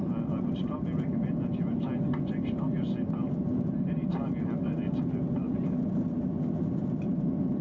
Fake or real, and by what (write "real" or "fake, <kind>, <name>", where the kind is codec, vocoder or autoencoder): real